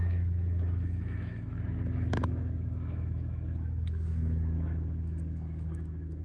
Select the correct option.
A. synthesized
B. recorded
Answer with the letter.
A